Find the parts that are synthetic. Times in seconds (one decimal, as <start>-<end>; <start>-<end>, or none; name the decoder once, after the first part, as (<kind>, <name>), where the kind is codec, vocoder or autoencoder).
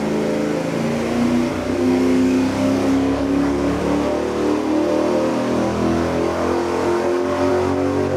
1.5-3.8 (codec, DAC); 5.3-7.5